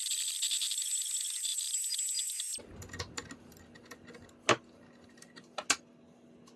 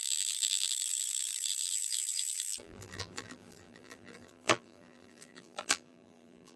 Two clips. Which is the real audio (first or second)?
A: first